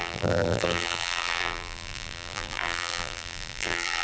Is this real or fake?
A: fake